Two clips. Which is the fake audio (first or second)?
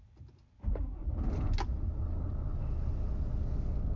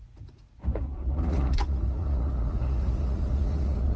second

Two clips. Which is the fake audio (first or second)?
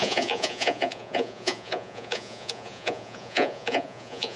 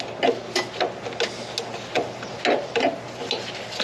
first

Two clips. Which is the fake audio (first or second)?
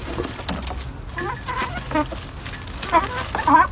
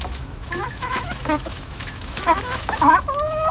second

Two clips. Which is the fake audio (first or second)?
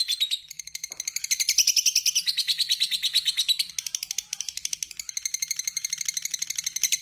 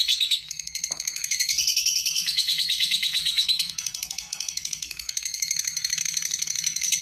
second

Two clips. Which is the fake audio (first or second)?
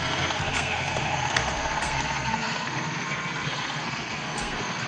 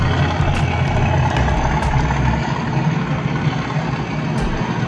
first